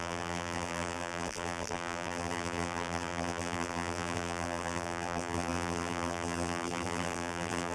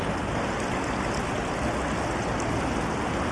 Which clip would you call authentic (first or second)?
second